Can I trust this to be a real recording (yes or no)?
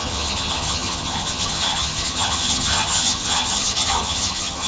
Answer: no